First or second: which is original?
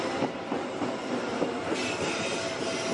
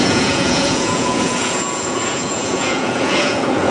first